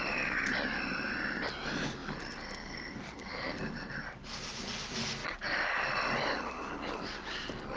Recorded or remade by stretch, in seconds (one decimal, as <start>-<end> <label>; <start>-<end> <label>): 0.0-2.0 recorded; 2.0-3.9 remade; 3.9-7.8 recorded